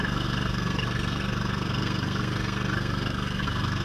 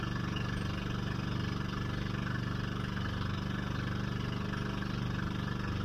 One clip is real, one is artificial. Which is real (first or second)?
second